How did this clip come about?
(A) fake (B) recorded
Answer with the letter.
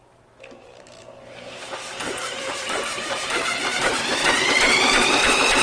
A